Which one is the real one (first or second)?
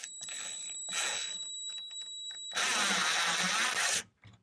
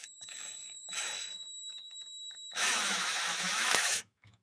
first